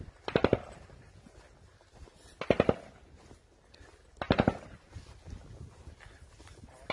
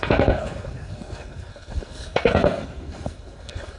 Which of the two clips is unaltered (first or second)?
first